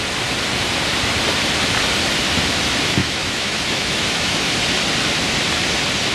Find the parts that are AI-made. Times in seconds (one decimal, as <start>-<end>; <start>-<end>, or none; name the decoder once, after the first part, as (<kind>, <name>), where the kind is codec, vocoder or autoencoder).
3.0-4.5 (autoencoder, DAC-VAE)